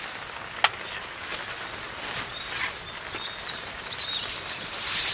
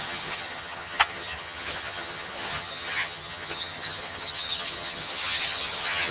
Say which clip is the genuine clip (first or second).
first